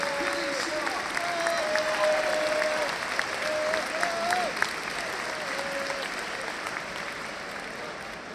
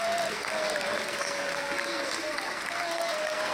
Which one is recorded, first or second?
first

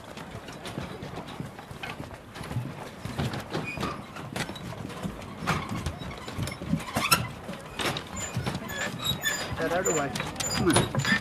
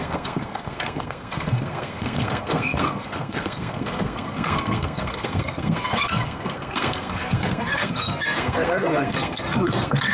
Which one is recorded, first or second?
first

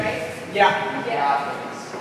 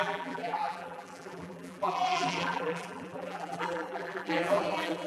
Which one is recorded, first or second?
first